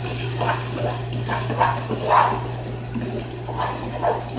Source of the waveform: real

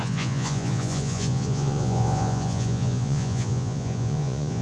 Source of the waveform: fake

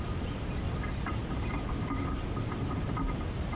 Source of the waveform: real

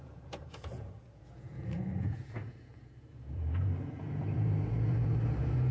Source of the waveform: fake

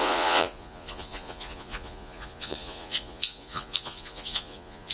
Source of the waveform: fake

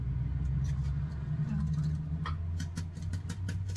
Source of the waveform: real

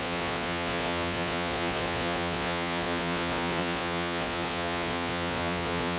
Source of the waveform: fake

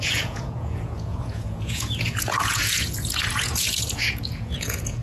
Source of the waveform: fake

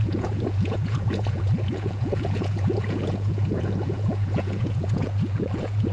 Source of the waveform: fake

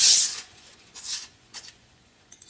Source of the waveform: fake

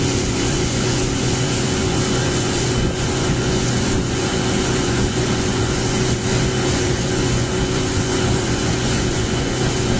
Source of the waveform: fake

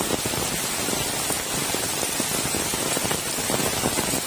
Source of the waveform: real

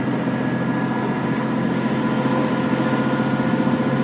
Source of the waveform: real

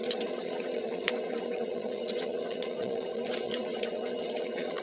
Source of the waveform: fake